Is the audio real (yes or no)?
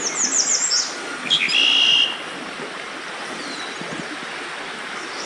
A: yes